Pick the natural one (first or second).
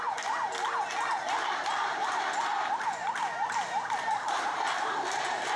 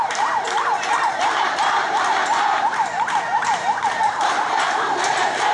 first